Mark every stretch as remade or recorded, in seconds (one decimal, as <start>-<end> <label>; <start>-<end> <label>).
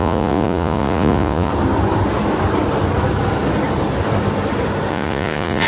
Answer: 0.0-1.5 remade; 1.5-4.9 recorded; 4.9-5.7 remade